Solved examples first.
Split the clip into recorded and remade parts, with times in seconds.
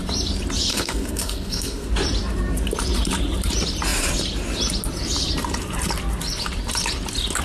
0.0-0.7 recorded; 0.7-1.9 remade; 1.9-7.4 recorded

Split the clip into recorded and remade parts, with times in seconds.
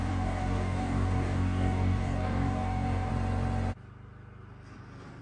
0.0-3.1 remade; 3.1-5.2 recorded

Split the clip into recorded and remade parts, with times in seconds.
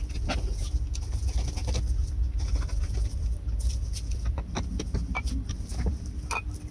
0.0-1.6 recorded; 1.6-4.5 remade; 4.5-6.7 recorded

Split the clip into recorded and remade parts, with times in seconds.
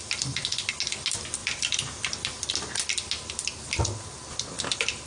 0.0-5.1 recorded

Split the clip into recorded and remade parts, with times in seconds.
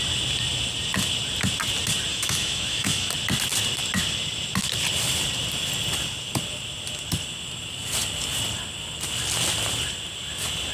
0.0-2.1 recorded; 2.1-3.1 remade; 3.1-10.7 recorded